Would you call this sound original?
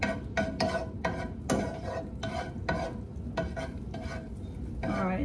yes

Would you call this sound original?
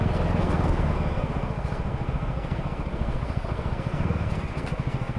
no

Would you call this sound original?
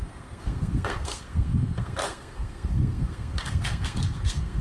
no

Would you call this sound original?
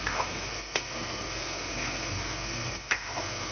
no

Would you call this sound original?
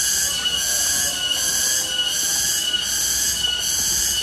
yes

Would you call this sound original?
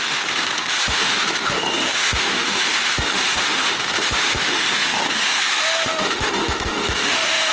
no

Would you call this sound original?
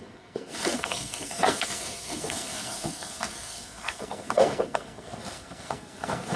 no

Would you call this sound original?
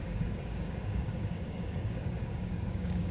no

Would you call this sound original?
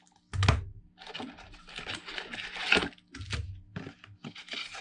yes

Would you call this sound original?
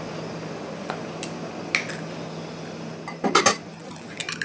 yes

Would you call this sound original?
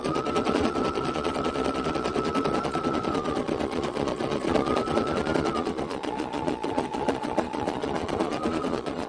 no